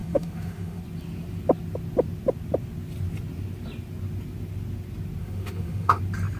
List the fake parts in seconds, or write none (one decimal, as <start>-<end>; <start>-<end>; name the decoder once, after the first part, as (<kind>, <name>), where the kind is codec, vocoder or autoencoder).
0.0-0.8 (autoencoder, DAC-VAE); 5.2-6.0